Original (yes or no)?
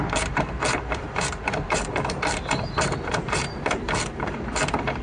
no